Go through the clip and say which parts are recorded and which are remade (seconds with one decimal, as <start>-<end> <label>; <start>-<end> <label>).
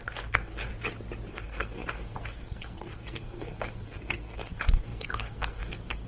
0.0-0.7 remade; 0.7-1.3 recorded; 1.3-6.1 remade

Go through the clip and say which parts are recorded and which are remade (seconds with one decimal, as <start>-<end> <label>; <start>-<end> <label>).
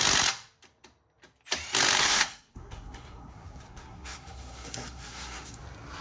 0.0-2.0 recorded; 2.0-5.6 remade; 5.6-6.0 recorded